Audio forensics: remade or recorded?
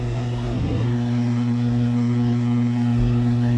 remade